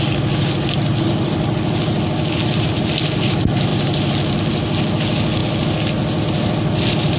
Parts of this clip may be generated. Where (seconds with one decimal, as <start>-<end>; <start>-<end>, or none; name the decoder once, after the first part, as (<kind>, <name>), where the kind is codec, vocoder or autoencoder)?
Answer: none